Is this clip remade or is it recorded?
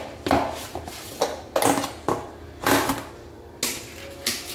recorded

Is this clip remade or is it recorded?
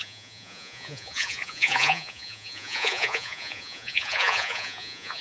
remade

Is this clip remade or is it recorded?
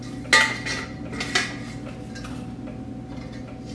recorded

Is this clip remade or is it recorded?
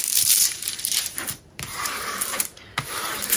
remade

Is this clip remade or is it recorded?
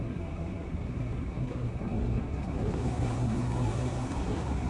remade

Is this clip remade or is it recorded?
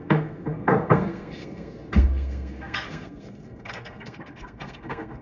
remade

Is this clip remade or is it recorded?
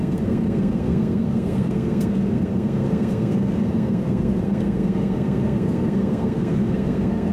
remade